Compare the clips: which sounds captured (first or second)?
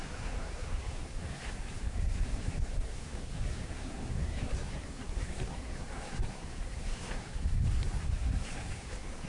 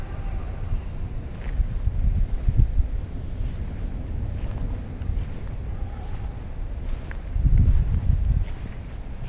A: second